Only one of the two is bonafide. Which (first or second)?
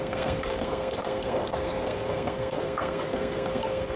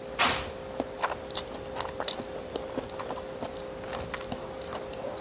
second